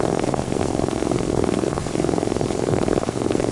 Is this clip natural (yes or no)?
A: no